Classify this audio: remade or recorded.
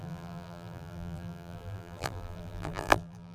remade